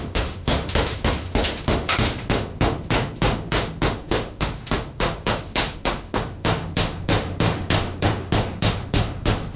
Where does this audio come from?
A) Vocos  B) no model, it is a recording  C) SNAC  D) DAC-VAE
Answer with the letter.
D